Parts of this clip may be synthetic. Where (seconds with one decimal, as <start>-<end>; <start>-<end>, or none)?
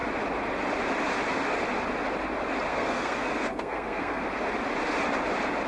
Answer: 2.7-4.2